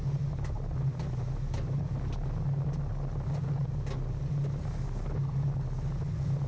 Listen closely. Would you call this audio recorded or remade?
recorded